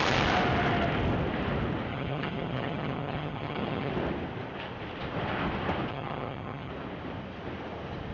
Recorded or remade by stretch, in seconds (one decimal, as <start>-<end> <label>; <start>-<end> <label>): 0.0-1.9 recorded; 1.9-3.9 remade; 3.9-5.9 recorded; 5.9-6.7 remade; 6.7-8.1 recorded